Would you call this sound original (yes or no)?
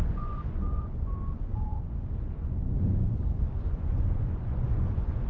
no